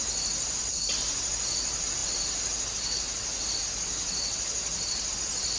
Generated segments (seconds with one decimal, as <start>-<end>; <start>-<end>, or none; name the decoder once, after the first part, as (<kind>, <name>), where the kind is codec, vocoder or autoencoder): none